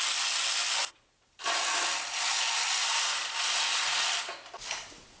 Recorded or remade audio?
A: recorded